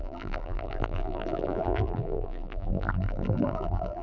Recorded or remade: remade